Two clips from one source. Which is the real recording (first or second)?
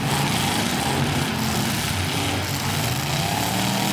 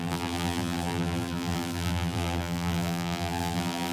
first